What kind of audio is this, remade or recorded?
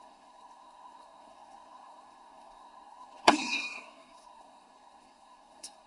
remade